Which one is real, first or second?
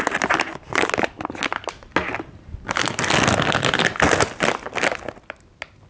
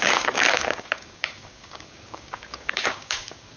first